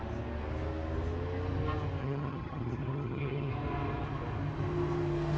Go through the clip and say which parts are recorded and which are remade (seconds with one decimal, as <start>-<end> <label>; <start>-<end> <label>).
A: 0.0-2.0 recorded; 2.0-3.5 remade; 3.5-5.4 recorded